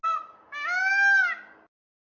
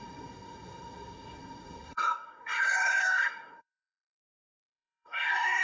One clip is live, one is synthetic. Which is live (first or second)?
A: first